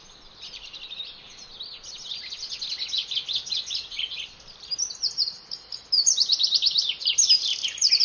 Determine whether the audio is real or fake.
real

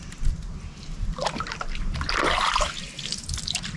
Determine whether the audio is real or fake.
real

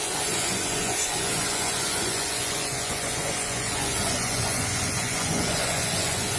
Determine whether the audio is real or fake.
fake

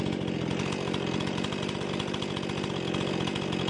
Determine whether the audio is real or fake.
real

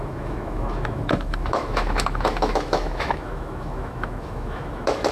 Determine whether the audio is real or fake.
fake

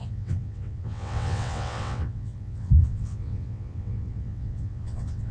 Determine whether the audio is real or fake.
fake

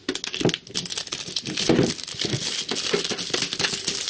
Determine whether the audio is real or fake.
real